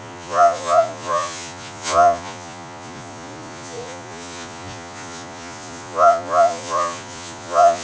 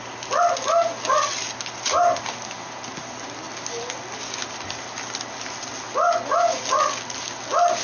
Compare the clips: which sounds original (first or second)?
second